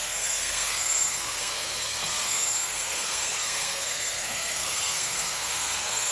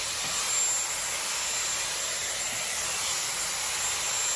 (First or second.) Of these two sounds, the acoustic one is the second